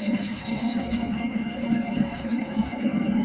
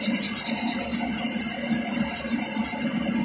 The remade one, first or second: first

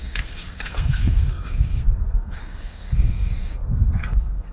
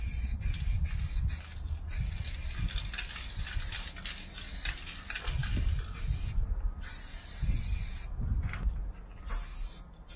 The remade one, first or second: first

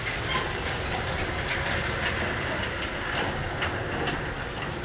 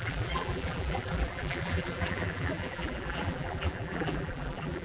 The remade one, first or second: second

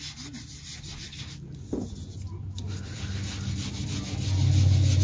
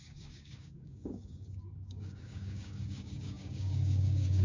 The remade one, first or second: second